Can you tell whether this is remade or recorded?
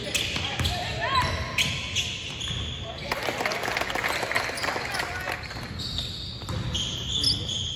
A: recorded